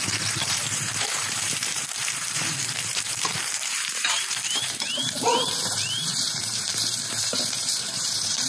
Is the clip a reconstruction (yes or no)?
yes